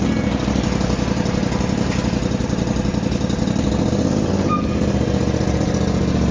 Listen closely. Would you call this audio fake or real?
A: real